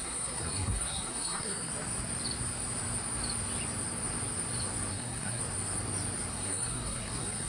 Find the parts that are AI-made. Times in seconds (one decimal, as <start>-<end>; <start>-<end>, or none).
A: 0.0-1.7; 4.9-5.4; 6.3-7.5